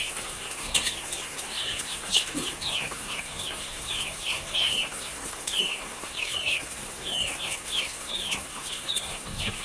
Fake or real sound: fake